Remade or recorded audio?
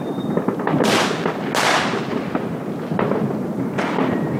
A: recorded